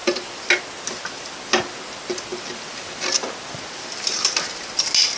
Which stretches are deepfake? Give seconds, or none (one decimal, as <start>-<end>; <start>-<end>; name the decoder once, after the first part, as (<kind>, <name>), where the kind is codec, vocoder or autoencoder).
none

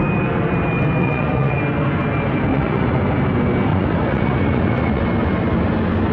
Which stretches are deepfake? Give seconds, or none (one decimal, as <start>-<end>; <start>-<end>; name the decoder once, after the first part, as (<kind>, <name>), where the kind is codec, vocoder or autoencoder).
1.0-1.6 (vocoder, Vocos); 2.5-3.0; 3.7-5.0